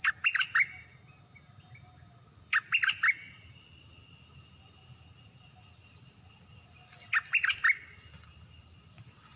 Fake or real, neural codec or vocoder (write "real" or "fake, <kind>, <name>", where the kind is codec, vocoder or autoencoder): real